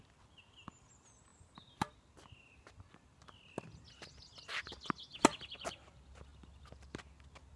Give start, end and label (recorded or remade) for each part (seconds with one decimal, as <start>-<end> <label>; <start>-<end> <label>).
0.0-7.6 recorded